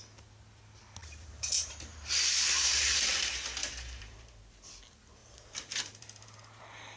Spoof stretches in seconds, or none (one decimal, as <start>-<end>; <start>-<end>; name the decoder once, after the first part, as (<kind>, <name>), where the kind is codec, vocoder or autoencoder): 1.0-2.7 (vocoder, BigVGAN v2); 3.6-4.7; 5.2-6.6